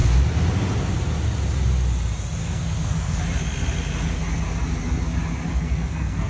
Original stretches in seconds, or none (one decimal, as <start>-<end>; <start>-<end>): 0.0-2.4; 3.2-5.5